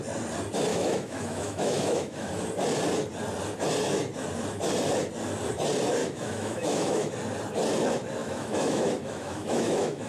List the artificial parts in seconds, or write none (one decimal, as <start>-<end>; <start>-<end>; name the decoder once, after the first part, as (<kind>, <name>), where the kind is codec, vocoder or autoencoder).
0.7-2.3 (autoencoder, DAC-VAE); 6.0-7.1; 8.2-10.1